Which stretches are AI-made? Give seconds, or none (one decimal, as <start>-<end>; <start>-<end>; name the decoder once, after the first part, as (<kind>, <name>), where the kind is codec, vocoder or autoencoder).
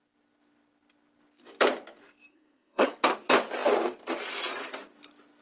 2.3-3.0 (codec, SNAC)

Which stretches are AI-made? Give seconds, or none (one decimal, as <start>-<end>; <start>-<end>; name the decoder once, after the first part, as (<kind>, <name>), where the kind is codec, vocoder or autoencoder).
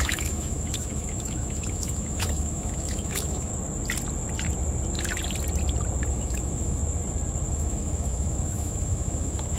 0.0-3.5 (autoencoder, DAC-VAE); 6.1-6.8; 7.5-9.6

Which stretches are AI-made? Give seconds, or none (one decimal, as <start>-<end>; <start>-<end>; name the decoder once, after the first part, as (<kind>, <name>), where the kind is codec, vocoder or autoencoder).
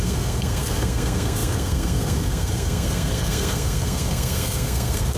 0.0-5.2 (codec, SNAC)